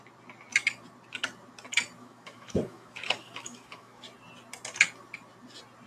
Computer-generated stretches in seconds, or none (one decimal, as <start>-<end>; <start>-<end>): 2.0-4.0